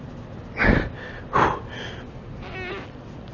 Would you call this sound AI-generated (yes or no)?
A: no